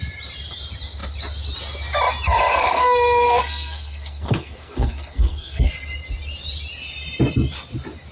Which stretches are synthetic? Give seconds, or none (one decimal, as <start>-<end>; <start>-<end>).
2.5-5.7